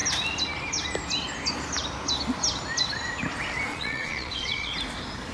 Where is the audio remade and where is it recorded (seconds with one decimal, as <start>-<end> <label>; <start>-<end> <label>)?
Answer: 0.0-3.7 recorded; 3.7-4.7 remade; 4.7-5.3 recorded